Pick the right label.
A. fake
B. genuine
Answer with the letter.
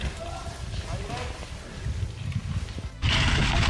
B